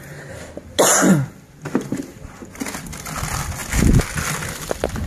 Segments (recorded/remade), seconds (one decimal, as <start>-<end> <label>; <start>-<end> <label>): 0.0-5.1 recorded